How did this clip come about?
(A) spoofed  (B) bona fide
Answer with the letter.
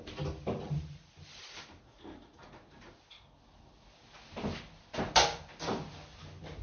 B